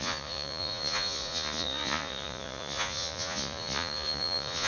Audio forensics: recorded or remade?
remade